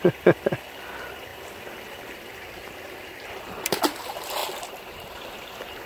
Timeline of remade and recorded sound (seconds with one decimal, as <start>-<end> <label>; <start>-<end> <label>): 0.0-5.9 recorded